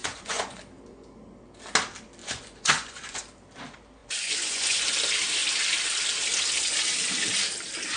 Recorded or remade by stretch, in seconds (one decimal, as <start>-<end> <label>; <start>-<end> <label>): 0.0-0.6 remade; 0.6-2.2 recorded; 2.2-3.2 remade; 3.2-4.0 recorded; 4.0-4.9 remade; 4.9-8.0 recorded